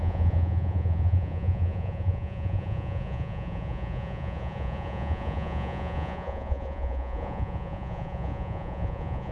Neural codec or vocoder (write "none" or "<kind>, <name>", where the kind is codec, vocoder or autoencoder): vocoder, Vocos